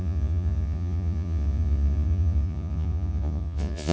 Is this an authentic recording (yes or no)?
no